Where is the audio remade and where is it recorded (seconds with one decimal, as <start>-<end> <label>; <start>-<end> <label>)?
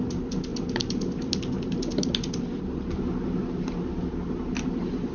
0.0-5.1 recorded